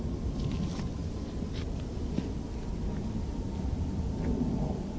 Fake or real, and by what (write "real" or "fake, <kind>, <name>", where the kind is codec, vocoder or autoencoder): real